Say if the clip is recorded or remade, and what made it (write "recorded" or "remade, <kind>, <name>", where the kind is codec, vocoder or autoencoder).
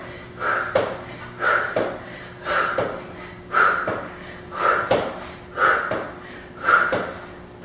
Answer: recorded